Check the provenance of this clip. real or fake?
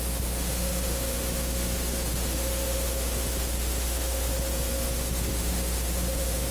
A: fake